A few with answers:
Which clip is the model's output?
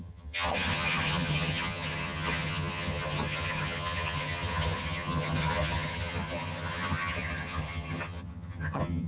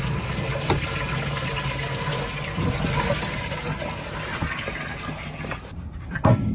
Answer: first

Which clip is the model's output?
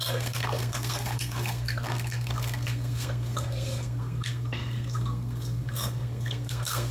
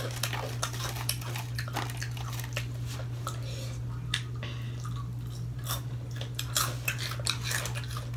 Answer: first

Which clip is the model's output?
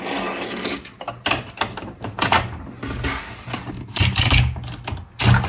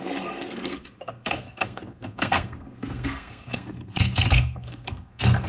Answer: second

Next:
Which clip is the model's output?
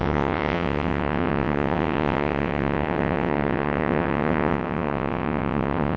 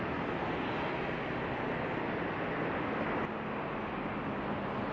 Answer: first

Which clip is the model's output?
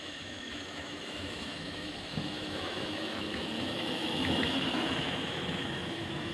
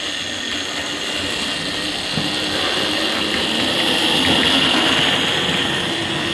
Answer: first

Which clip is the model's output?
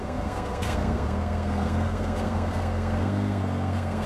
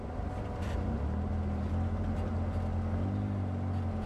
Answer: first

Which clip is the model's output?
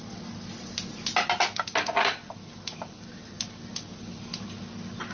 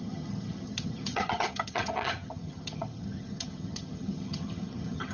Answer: second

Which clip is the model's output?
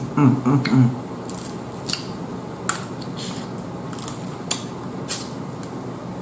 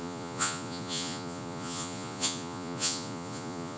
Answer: second